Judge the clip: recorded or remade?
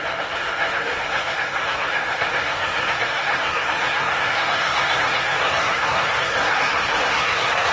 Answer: remade